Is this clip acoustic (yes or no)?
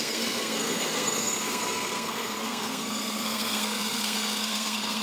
no